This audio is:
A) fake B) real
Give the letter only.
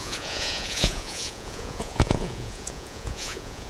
A